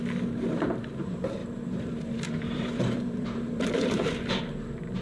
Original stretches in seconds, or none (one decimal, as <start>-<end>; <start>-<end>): 0.0-1.4; 4.4-5.0